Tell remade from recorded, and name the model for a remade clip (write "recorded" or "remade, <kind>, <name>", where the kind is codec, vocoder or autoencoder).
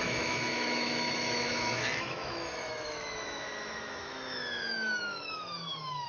remade, autoencoder, DAC-VAE